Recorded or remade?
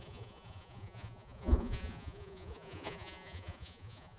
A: remade